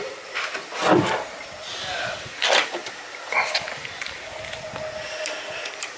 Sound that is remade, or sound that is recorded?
recorded